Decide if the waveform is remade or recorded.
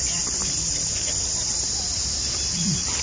remade